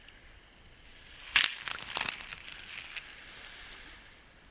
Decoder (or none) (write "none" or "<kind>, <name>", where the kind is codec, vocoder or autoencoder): none